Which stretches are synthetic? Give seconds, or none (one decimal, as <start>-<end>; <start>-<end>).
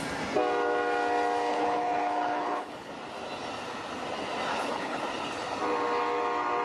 1.5-2.9; 4.5-5.0